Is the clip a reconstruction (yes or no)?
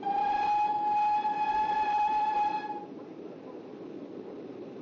no